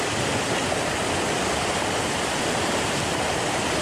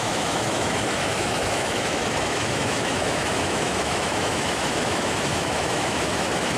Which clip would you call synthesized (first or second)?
second